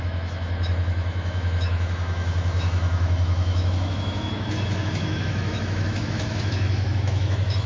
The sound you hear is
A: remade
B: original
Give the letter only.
A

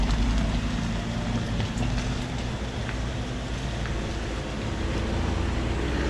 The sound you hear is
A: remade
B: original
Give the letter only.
B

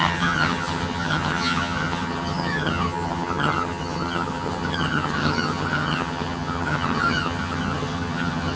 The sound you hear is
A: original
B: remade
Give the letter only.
B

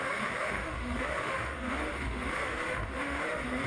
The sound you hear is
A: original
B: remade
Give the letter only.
B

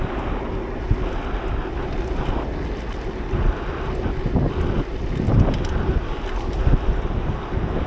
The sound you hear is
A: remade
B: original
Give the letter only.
B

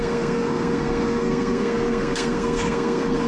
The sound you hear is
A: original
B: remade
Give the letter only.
B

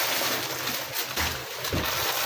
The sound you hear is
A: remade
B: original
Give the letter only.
A